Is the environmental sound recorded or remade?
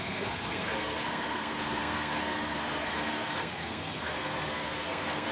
remade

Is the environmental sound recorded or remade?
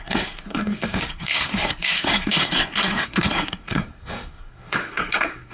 remade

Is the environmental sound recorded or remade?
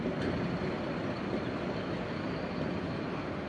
recorded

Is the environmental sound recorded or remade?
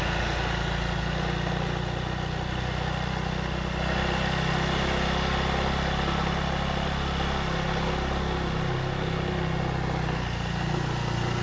recorded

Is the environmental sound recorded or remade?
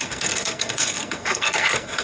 remade